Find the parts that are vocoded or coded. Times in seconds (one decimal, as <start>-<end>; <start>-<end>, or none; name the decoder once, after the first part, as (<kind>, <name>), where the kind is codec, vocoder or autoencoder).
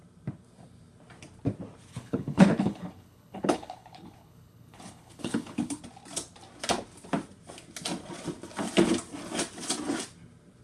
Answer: 1.9-5.8 (codec, HILCodec)